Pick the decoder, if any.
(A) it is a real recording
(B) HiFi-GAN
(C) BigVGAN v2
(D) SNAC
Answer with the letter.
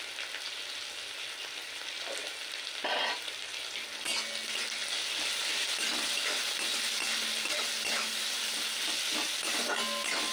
A